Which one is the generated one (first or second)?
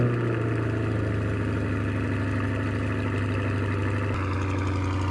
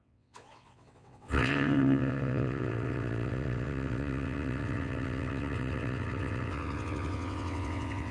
second